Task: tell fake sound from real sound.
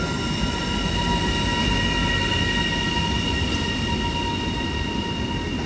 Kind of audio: real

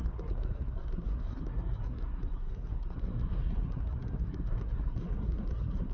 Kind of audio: fake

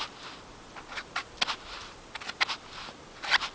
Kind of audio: real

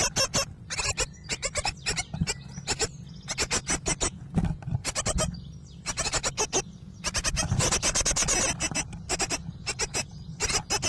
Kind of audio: real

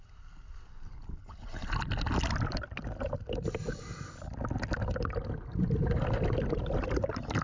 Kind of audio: real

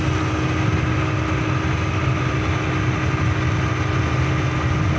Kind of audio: real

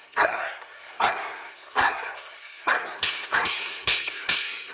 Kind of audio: fake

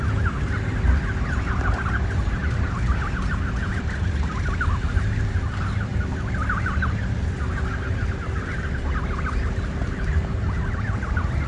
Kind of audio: real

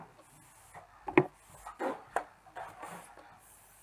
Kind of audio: real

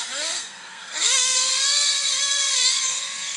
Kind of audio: fake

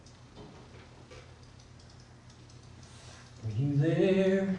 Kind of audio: real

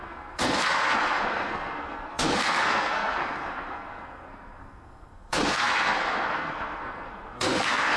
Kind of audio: fake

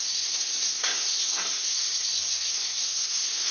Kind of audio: fake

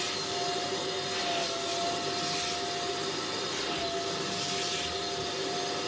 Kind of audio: real